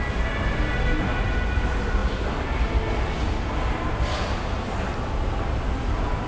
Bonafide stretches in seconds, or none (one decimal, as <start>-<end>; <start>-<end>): 0.0-6.3